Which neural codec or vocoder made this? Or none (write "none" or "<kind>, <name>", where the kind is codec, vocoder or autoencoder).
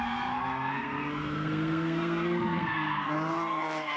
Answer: codec, SNAC